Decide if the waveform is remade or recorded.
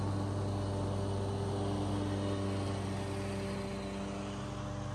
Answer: recorded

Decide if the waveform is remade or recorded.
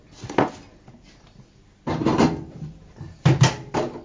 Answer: recorded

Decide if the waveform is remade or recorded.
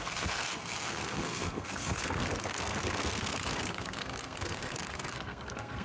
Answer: remade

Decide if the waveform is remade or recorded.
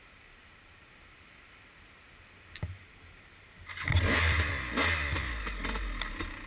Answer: recorded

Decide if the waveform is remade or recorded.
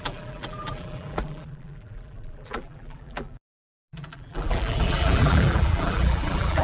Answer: remade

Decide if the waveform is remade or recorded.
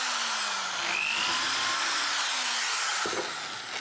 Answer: recorded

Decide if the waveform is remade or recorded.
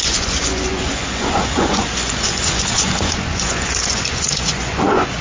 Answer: remade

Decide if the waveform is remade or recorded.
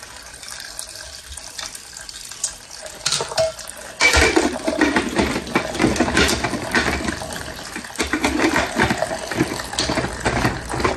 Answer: recorded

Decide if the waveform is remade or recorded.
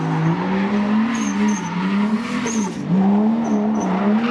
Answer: recorded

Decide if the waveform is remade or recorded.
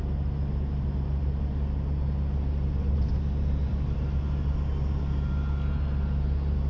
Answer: recorded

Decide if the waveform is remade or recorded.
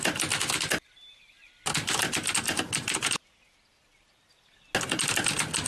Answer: recorded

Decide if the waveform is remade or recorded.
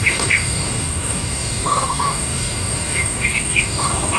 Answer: remade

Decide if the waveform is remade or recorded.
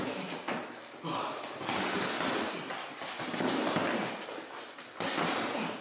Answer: recorded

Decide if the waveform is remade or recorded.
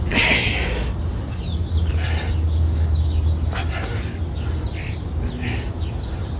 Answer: recorded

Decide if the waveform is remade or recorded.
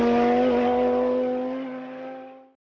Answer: recorded